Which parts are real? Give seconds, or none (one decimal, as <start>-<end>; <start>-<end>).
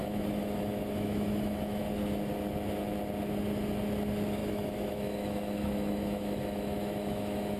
1.8-4.4